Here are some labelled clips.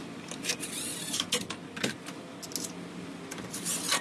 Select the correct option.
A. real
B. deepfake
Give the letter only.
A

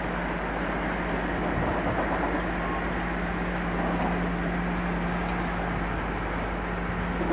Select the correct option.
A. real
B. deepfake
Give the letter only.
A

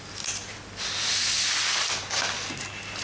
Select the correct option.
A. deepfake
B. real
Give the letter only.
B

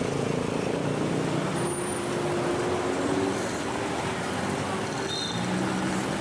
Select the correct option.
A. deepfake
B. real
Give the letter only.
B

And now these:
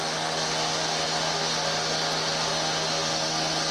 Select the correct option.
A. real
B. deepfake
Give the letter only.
A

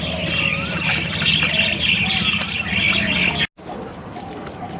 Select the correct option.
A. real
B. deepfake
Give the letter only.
A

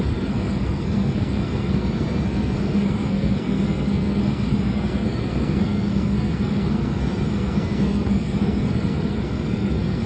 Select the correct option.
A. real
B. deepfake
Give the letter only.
B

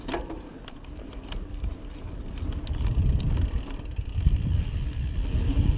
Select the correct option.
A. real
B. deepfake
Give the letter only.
A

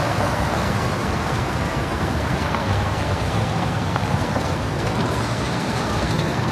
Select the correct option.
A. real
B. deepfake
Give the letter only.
B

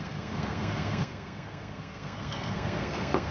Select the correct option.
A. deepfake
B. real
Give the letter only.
A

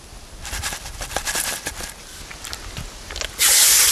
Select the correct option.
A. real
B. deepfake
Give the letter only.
A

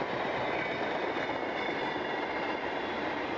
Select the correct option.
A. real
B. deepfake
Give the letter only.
A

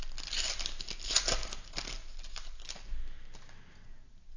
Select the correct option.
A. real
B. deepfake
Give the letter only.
A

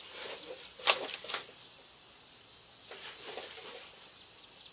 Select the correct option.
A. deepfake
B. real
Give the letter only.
B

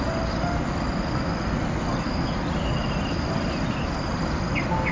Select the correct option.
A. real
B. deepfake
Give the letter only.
A